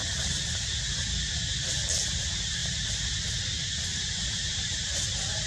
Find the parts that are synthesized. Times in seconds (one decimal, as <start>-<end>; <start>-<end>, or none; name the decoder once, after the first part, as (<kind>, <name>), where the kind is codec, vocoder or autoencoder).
3.9-5.5 (vocoder, BigVGAN v2)